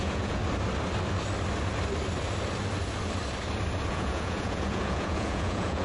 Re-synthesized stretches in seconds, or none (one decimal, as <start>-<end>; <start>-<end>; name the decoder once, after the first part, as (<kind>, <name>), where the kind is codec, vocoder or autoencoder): 0.0-0.4 (vocoder, Vocos); 3.9-5.8

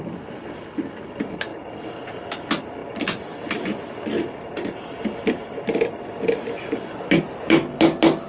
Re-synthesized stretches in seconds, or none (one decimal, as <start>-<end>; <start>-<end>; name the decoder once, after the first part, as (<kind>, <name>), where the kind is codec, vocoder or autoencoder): 1.5-2.1 (vocoder, Vocos)